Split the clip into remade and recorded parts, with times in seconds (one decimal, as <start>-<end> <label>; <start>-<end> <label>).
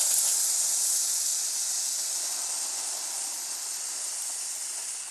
0.0-5.1 recorded